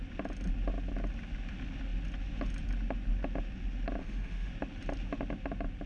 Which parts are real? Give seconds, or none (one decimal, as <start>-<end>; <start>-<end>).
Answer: 0.0-4.0; 4.5-5.9